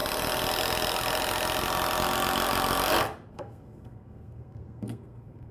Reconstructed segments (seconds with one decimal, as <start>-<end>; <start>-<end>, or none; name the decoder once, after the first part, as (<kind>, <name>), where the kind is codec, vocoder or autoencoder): 3.3-5.5 (codec, SNAC)